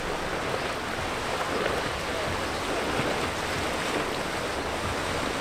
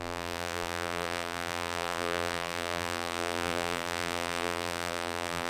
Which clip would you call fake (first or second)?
second